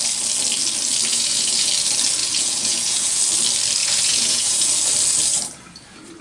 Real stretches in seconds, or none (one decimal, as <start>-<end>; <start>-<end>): 0.0-1.1; 1.7-2.2; 3.2-3.8; 4.7-6.2